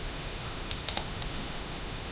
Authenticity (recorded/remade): remade